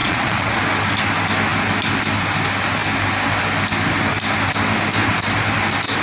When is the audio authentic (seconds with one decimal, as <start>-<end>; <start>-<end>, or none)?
0.6-6.0